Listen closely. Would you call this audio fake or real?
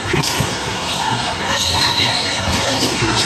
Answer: fake